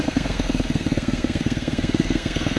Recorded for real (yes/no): no